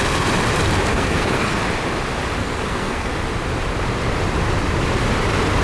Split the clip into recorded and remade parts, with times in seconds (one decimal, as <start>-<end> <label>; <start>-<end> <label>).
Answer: 0.0-0.9 recorded; 0.9-1.6 remade; 1.6-2.4 recorded; 2.4-3.1 remade; 3.1-5.6 recorded